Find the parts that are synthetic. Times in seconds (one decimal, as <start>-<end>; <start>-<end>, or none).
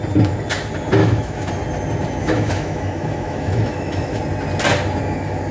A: 1.0-1.5; 2.2-4.2